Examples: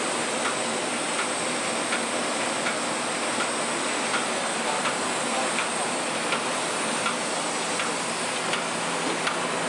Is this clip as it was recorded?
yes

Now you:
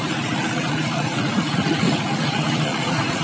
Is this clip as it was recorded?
no